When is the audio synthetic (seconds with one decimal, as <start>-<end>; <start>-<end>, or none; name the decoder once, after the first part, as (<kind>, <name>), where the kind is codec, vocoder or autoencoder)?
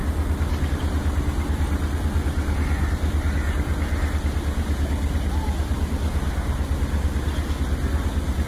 none